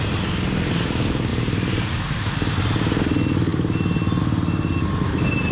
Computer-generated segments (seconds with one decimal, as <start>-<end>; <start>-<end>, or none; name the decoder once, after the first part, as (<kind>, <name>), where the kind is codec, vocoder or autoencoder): 1.3-2.6 (vocoder, BigVGAN v2)